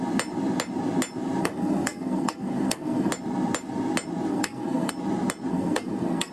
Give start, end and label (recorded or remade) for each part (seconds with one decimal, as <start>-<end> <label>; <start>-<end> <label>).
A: 0.0-1.4 recorded; 1.4-3.1 remade; 3.1-4.3 recorded; 4.3-4.9 remade; 4.9-5.5 recorded; 5.5-6.3 remade